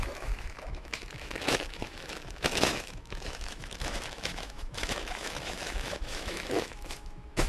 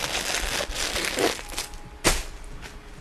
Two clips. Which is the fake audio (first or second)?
first